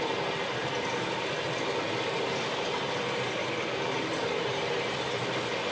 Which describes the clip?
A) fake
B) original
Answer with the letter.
B